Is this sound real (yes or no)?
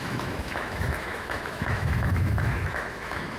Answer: no